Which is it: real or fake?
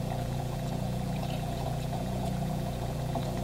fake